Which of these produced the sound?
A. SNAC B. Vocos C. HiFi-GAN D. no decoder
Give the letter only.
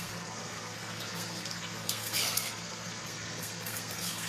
A